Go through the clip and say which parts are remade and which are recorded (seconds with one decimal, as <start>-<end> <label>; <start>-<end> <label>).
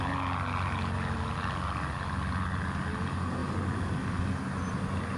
0.0-5.2 recorded